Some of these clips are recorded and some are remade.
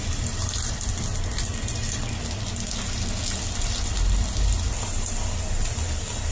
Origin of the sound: recorded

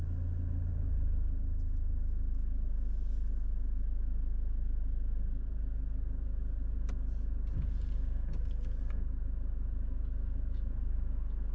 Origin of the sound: recorded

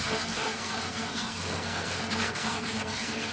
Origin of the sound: remade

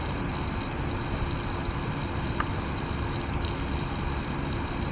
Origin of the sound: recorded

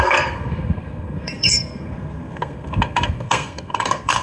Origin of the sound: remade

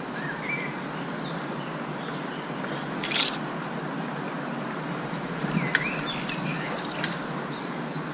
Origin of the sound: recorded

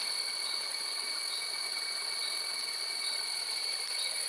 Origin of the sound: recorded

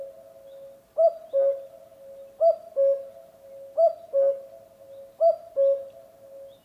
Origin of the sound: recorded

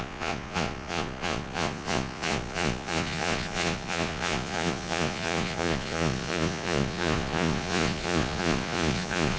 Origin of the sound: remade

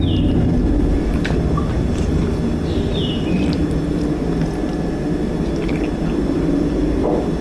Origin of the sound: recorded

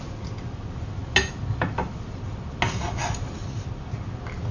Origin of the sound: recorded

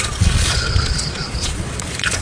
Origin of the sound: remade